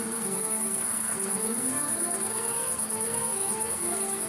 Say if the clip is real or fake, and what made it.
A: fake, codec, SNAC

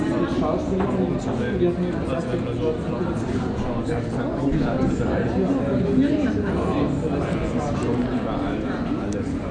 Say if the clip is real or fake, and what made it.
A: real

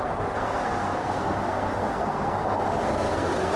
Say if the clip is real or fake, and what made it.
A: fake, codec, SNAC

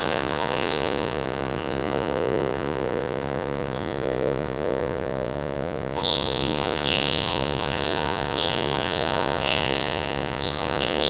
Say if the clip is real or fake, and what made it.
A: fake, vocoder, Vocos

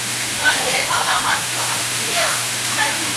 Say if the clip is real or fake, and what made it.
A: fake, autoencoder, DAC-VAE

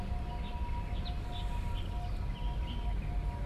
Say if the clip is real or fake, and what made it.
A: real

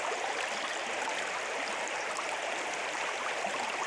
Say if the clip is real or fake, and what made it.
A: real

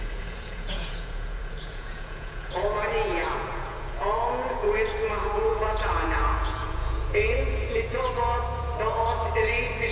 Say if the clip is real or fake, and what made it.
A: fake, vocoder, Vocos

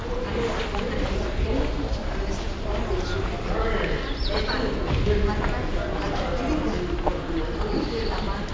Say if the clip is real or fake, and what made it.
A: real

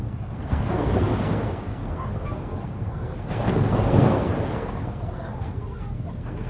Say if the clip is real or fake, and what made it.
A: fake, codec, SNAC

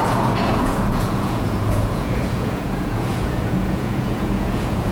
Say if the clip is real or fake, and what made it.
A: fake, vocoder, Vocos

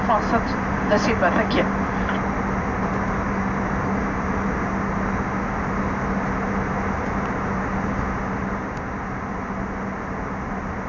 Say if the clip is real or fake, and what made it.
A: real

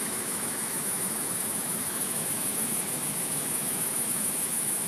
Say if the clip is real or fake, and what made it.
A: fake, autoencoder, DAC-VAE